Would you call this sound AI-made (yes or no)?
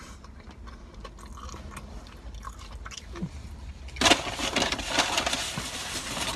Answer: no